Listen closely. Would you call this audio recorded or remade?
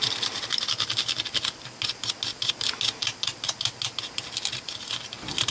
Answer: recorded